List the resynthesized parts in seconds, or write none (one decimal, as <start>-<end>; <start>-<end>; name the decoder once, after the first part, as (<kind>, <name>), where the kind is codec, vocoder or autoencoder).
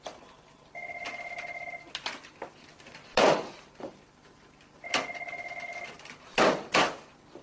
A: none